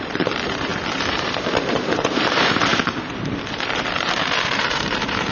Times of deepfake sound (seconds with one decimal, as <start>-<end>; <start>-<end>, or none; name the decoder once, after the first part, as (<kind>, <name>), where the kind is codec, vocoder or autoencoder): 0.0-5.3 (vocoder, BigVGAN v2)